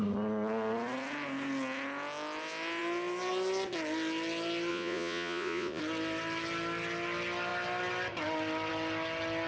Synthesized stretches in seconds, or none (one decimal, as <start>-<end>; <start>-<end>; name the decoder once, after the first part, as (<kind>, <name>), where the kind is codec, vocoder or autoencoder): 4.7-5.8 (vocoder, Vocos)